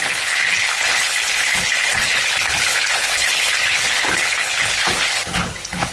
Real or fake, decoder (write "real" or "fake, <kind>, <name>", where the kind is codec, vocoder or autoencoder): fake, codec, HILCodec